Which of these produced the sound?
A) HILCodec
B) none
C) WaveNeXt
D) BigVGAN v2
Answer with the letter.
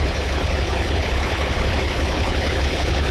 A